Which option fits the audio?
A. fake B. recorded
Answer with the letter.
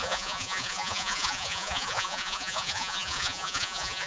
A